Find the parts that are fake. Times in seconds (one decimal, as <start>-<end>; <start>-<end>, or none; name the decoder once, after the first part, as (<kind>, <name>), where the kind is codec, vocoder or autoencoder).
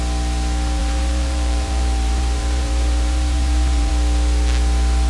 0.8-3.9 (vocoder, BigVGAN v2)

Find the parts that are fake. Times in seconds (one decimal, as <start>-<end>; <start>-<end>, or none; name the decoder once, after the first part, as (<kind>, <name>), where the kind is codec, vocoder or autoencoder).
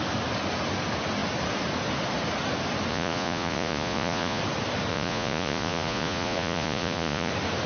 2.9-4.4 (vocoder, Vocos); 4.9-7.3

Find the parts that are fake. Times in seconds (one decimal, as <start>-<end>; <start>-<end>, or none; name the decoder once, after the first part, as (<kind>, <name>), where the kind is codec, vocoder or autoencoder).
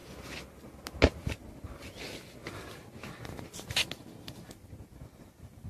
none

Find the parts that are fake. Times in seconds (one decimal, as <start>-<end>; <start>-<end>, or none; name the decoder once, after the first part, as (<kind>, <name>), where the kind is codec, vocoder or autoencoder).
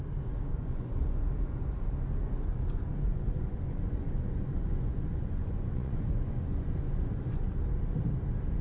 0.5-1.2 (vocoder, Vocos); 2.4-7.5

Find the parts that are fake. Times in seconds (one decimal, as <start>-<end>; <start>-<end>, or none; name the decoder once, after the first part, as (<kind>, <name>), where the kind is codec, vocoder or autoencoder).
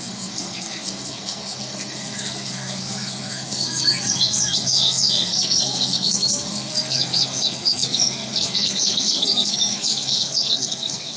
0.0-11.2 (codec, SNAC)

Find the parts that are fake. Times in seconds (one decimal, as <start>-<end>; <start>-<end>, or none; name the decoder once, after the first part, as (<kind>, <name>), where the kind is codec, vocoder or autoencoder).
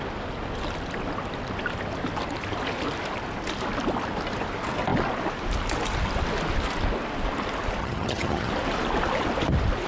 7.8-8.5 (vocoder, HiFi-GAN)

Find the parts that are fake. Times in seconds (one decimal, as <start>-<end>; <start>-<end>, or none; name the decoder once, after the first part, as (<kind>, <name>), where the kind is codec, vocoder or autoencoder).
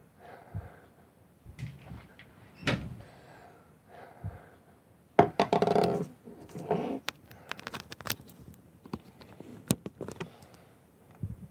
0.0-2.6 (vocoder, BigVGAN v2); 7.0-9.5; 10.9-11.5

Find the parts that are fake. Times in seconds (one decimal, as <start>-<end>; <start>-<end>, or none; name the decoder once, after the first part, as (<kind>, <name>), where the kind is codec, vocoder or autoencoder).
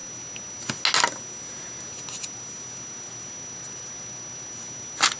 none